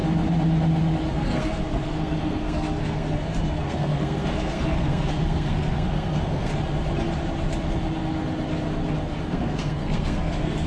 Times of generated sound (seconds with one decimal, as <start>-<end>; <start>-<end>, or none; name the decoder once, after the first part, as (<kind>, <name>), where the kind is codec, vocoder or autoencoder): 1.1-6.5 (codec, SNAC); 9.3-10.7